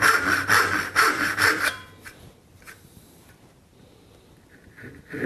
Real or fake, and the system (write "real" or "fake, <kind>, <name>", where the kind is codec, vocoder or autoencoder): fake, vocoder, BigVGAN v2